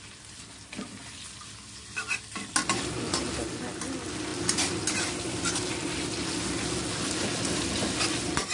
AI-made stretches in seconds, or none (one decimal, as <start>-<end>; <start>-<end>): none